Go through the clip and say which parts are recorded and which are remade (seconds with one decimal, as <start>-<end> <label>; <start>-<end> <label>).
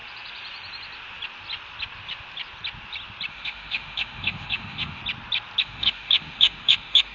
0.0-3.3 recorded; 3.3-5.0 remade; 5.0-5.6 recorded; 5.6-7.1 remade